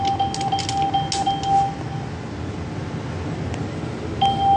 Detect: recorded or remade recorded